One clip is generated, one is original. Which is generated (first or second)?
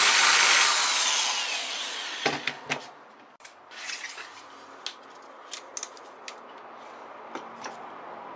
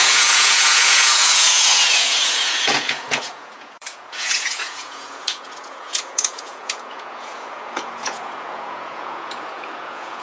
second